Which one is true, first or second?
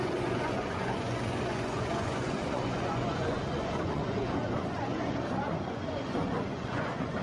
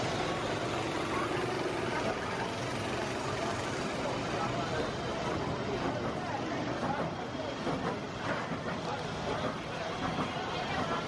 second